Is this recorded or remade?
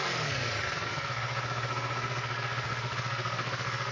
remade